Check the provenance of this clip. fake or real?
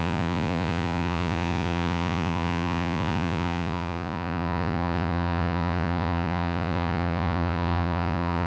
fake